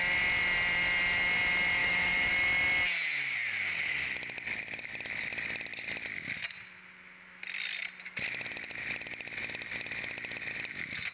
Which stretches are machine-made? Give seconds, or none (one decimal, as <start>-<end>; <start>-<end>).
1.8-2.3